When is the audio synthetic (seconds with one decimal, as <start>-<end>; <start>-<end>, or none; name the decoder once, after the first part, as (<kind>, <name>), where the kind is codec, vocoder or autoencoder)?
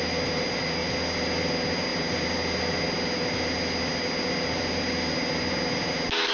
none